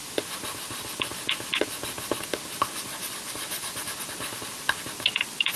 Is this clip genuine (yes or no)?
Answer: yes